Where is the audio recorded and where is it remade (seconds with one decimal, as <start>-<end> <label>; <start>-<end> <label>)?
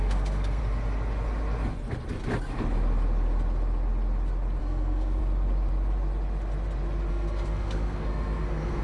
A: 0.0-0.6 remade; 0.6-4.6 recorded; 4.6-5.2 remade; 5.2-7.1 recorded; 7.1-8.8 remade